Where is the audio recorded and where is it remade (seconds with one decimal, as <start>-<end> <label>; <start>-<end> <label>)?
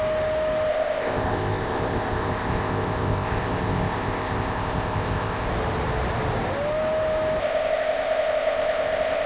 0.0-0.7 recorded; 0.7-5.5 remade; 5.5-7.4 recorded; 7.4-9.3 remade